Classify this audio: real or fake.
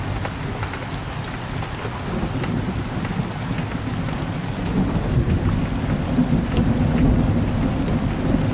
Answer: real